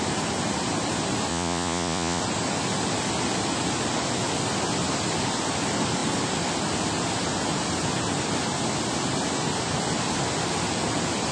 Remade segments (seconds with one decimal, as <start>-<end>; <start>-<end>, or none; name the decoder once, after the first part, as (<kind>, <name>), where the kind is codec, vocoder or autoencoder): 1.3-2.2 (vocoder, Vocos)